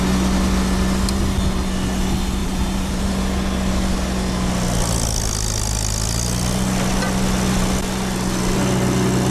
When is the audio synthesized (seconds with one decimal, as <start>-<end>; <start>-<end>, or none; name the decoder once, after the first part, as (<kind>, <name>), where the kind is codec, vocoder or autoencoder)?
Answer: 2.4-3.1 (vocoder, BigVGAN v2)